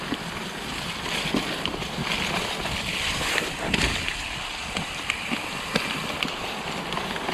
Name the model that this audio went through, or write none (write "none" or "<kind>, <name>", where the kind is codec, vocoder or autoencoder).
none